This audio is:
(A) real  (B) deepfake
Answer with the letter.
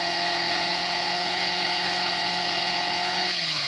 B